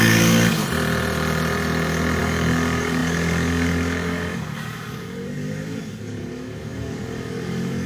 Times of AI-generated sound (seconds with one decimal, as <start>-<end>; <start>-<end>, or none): 0.0-0.6; 2.2-7.9